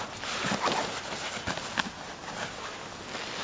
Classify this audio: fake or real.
real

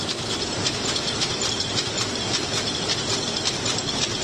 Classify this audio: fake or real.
real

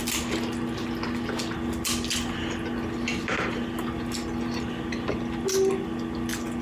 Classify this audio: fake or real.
real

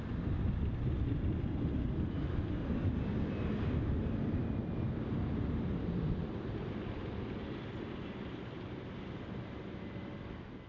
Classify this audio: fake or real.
real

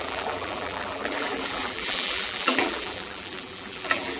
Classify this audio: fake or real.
fake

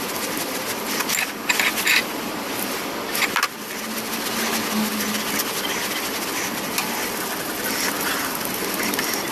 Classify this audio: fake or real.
real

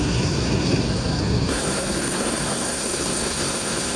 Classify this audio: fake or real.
fake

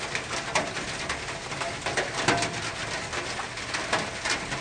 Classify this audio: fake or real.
real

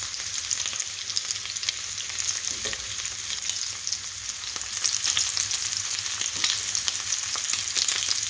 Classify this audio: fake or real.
real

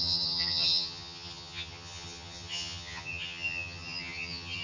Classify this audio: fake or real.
fake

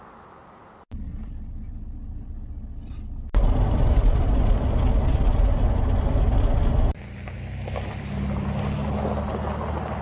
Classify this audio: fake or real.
real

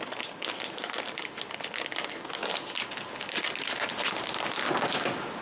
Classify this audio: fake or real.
real